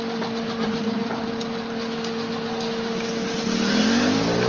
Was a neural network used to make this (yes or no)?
no